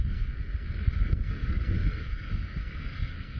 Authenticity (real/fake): fake